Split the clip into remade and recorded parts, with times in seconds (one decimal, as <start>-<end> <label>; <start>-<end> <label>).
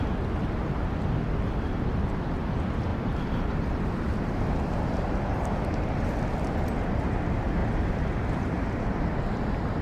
0.0-2.9 recorded; 2.9-5.5 remade; 5.5-7.6 recorded; 7.6-8.5 remade; 8.5-9.8 recorded